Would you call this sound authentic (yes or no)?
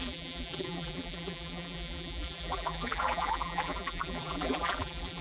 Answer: no